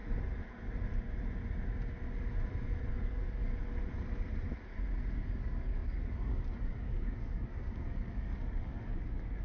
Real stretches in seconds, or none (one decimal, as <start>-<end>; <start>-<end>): 0.0-2.9; 3.5-5.1